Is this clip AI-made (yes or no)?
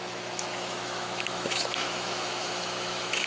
yes